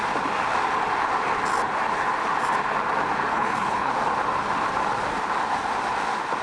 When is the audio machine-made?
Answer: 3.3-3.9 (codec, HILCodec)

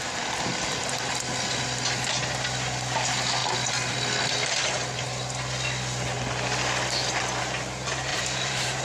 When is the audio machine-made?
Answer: 8.1-8.8 (vocoder, BigVGAN v2)

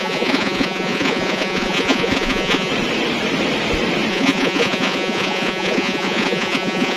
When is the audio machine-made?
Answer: 0.0-2.7 (vocoder, Vocos); 4.1-7.0

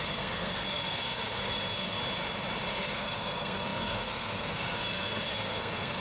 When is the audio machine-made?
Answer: 0.0-2.0 (codec, SNAC); 2.7-6.0

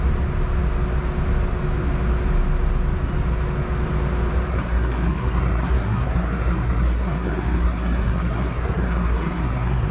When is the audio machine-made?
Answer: 4.5-9.9 (codec, SNAC)